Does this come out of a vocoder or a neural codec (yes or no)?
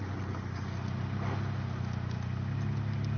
no